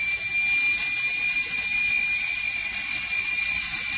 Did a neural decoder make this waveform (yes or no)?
no